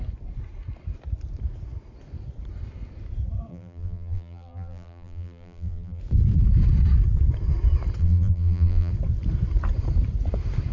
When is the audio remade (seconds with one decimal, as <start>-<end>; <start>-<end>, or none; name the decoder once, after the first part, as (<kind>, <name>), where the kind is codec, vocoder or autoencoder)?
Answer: 3.5-6.0 (vocoder, BigVGAN v2); 8.0-8.9